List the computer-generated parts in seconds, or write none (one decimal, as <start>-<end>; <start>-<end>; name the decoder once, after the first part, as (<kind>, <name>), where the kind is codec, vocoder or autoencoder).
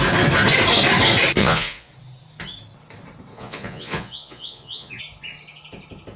1.4-1.9 (vocoder, Vocos); 3.3-5.0